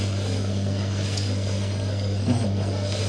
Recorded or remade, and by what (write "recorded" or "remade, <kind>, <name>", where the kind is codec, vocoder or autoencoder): remade, codec, SNAC